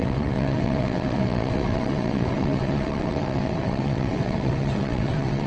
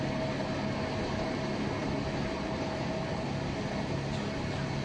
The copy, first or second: first